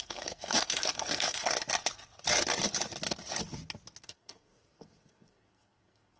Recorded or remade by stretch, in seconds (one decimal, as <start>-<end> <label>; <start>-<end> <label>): 0.0-1.5 remade; 1.5-4.0 recorded; 4.0-6.2 remade